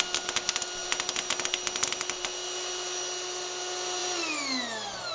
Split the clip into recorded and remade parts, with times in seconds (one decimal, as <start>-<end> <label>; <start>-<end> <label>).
0.0-5.1 recorded